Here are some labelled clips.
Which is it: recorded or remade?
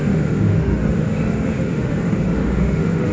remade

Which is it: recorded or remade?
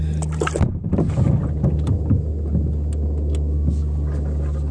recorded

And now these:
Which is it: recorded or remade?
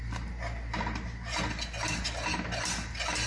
recorded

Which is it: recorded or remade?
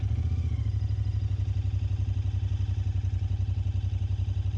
recorded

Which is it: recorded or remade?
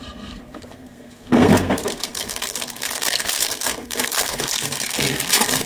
remade